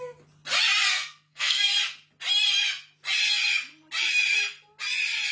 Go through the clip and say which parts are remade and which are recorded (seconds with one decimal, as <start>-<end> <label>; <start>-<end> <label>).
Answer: 0.0-0.9 recorded; 0.9-1.7 remade; 1.7-5.3 recorded